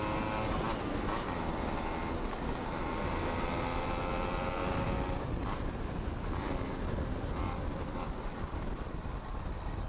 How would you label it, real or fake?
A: real